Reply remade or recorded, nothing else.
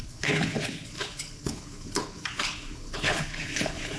remade